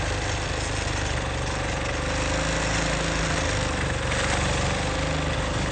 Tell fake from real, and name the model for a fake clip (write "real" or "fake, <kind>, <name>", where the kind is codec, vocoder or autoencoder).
real